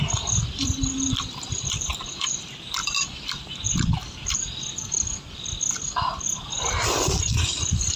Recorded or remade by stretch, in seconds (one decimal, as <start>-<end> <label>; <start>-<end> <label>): 0.0-8.0 remade